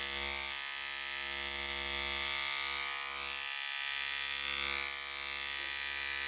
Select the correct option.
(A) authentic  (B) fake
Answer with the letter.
A